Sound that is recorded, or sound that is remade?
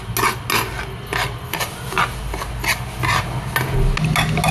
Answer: recorded